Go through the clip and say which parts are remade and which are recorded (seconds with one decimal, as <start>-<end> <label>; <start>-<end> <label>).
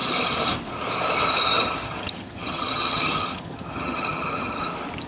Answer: 0.0-1.5 recorded; 1.5-4.6 remade; 4.6-5.1 recorded